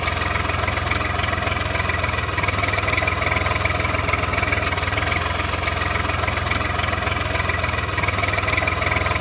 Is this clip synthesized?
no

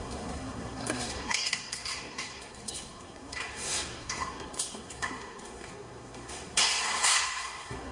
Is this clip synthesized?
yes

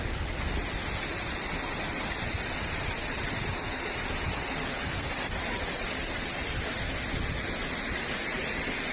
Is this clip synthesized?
no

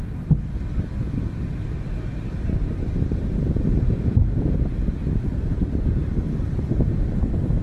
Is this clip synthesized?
no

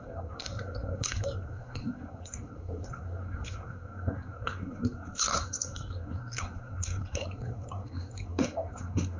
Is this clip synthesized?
yes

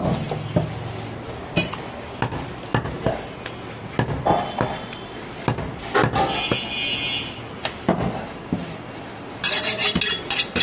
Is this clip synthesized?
no